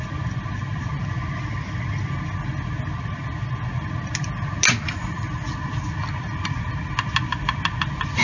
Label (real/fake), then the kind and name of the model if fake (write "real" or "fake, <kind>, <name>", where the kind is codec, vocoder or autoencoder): real